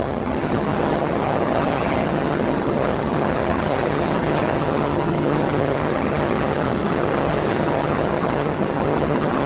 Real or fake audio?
fake